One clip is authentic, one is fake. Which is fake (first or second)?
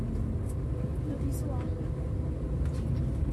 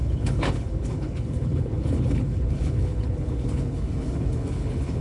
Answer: second